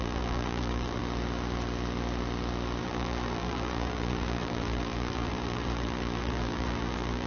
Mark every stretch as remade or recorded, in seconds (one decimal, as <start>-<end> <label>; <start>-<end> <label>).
0.0-1.0 remade; 1.0-2.8 recorded; 2.8-7.3 remade